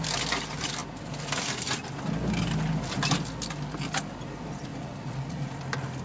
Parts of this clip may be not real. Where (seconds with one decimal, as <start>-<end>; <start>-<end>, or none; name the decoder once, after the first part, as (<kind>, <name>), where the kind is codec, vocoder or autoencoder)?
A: 4.7-5.6 (vocoder, Vocos)